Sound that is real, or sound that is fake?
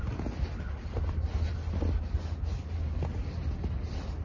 real